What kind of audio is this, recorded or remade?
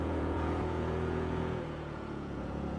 remade